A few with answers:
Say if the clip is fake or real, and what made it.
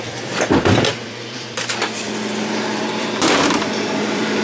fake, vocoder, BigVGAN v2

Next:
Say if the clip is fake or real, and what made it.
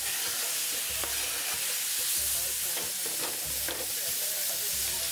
real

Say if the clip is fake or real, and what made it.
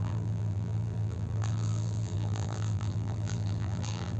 fake, vocoder, BigVGAN v2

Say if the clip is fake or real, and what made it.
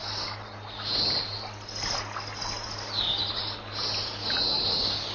real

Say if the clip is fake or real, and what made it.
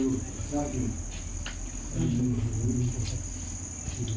real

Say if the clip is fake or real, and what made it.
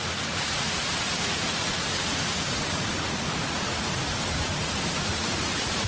fake, vocoder, Vocos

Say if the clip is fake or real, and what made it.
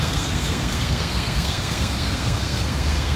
fake, codec, SNAC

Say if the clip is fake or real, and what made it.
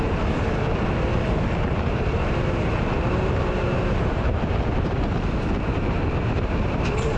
fake, vocoder, BigVGAN v2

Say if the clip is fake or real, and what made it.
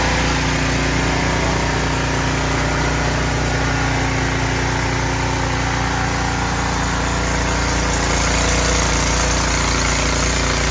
real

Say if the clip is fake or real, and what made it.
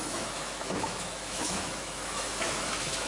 fake, autoencoder, DAC-VAE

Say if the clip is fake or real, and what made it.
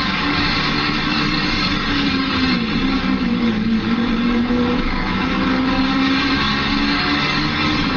fake, codec, DAC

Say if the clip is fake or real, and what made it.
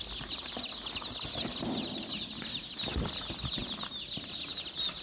real